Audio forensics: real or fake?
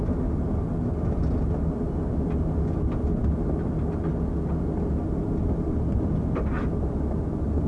real